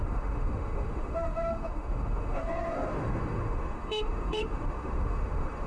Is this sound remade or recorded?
remade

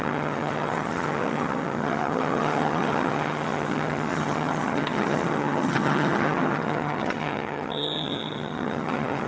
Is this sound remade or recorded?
remade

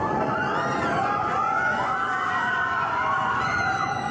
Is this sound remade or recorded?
remade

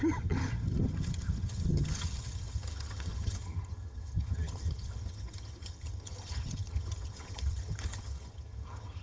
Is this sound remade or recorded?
remade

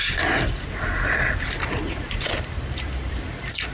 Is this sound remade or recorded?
remade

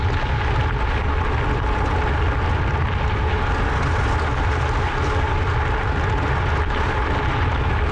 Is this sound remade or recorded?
recorded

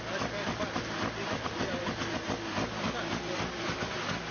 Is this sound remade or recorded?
recorded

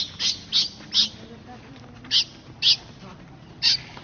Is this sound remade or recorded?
recorded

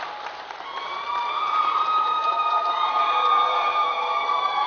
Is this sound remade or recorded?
remade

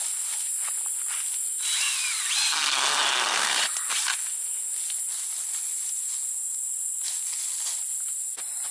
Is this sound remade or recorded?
recorded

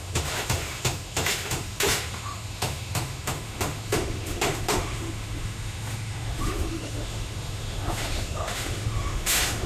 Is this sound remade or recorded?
remade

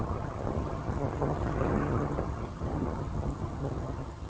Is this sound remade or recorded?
remade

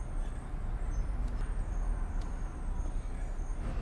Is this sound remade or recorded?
recorded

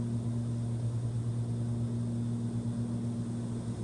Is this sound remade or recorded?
recorded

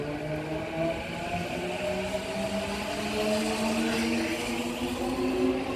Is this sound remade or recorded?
recorded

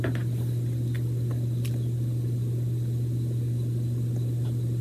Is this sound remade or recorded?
recorded